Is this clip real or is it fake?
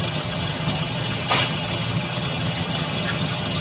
fake